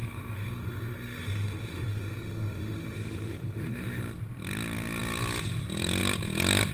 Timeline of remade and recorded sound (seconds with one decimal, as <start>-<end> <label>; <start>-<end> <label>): 0.0-4.0 remade; 4.0-6.7 recorded